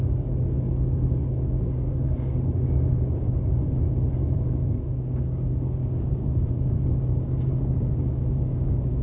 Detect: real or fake fake